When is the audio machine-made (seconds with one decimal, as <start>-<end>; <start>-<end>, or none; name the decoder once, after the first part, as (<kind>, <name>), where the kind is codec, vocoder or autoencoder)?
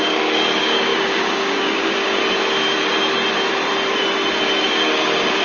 0.0-2.2 (codec, DAC); 4.7-5.4